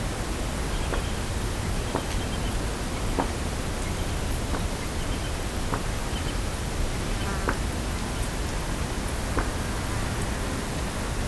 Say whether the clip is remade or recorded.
recorded